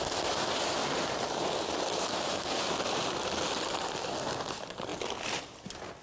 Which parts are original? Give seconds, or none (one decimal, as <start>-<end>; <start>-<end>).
0.0-0.8; 3.4-6.0